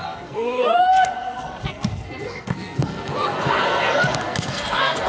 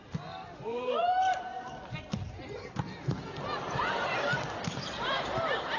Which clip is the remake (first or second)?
first